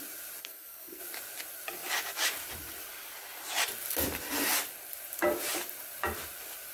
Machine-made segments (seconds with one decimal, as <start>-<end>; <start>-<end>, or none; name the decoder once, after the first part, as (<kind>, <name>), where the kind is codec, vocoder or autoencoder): 0.4-1.0 (codec, SNAC)